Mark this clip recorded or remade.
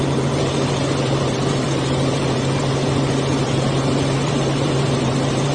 remade